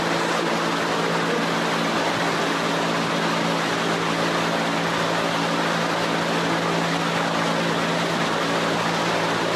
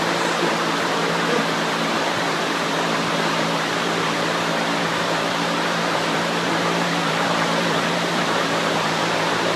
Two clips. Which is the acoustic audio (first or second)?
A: first